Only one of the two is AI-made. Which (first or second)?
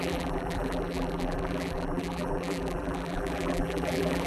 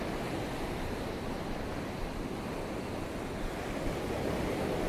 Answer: first